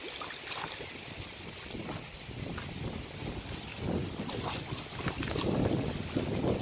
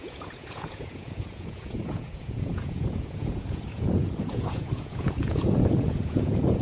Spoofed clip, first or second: second